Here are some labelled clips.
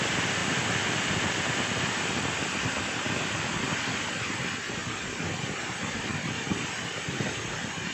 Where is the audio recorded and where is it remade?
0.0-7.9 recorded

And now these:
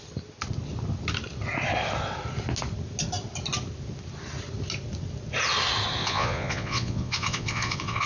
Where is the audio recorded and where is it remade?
0.0-6.0 recorded; 6.0-8.1 remade

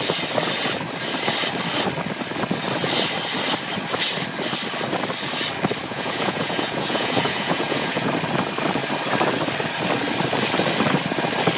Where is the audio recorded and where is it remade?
0.0-5.8 recorded; 5.8-8.1 remade; 8.1-11.6 recorded

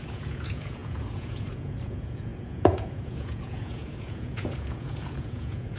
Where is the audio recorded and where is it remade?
0.0-5.8 remade